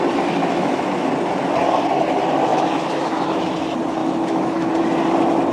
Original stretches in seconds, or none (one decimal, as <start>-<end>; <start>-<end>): 0.0-0.4; 1.1-2.5; 3.5-4.0; 4.7-5.5